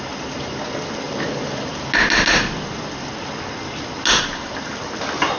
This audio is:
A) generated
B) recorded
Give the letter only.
B